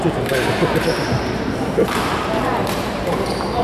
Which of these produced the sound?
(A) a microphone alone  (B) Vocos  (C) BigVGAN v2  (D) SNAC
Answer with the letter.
C